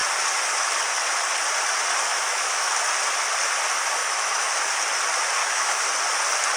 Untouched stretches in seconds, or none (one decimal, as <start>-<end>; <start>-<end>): 0.0-2.1; 2.7-4.0; 4.5-5.4; 5.9-6.6